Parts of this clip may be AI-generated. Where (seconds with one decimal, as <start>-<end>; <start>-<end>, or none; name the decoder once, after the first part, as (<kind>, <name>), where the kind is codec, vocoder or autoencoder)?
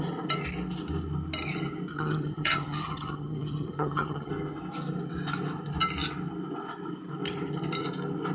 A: 1.9-4.3 (vocoder, HiFi-GAN)